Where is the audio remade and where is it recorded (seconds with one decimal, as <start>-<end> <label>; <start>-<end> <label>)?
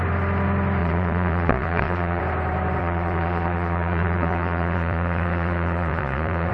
0.0-0.8 recorded; 0.8-2.2 remade; 2.2-2.8 recorded; 2.8-6.5 remade